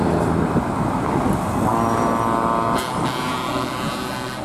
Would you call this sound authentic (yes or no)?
yes